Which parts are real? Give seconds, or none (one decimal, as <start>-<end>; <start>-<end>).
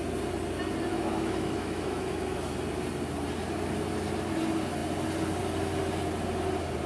0.0-0.9; 2.5-6.9